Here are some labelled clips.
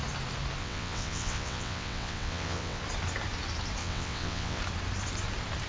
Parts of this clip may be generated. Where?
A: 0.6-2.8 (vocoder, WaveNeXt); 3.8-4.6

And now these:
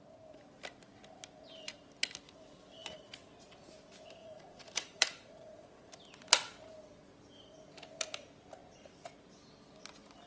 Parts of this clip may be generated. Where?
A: 4.2-5.9 (vocoder, Vocos)

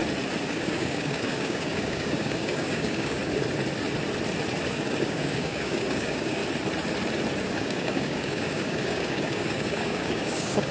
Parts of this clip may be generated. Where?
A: 0.5-3.2 (codec, DAC); 4.7-6.4; 7.5-10.7

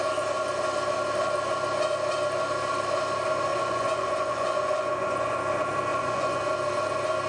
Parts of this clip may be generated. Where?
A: 3.5-5.4 (vocoder, Vocos); 5.9-6.4

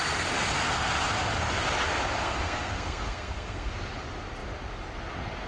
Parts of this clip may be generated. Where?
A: 2.2-3.7 (codec, SNAC)

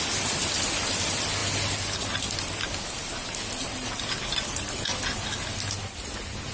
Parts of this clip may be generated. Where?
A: none

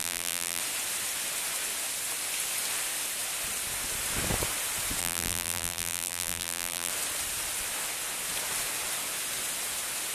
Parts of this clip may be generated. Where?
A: 0.0-0.6 (vocoder, BigVGAN v2); 5.0-6.9